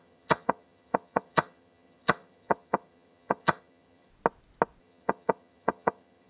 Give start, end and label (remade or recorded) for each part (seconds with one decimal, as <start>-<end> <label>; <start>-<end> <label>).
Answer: 0.0-4.1 remade; 4.1-4.8 recorded; 4.8-6.3 remade